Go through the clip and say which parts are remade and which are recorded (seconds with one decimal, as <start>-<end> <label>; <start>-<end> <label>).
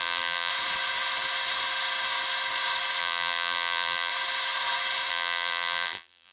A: 0.0-0.5 remade; 0.5-3.0 recorded; 3.0-4.1 remade; 4.1-5.1 recorded; 5.1-6.3 remade